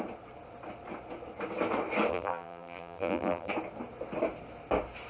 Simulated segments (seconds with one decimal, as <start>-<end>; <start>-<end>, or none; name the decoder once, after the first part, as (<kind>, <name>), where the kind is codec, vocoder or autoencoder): 2.1-3.5 (vocoder, BigVGAN v2)